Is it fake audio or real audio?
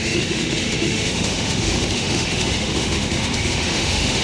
fake